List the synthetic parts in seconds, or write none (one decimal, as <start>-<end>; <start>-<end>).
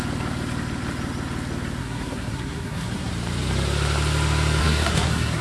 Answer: 1.8-3.1; 4.6-5.4